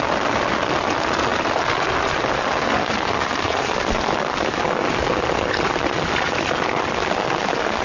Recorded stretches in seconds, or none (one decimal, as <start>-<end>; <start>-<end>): 0.0-7.8